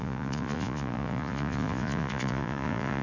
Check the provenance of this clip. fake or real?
fake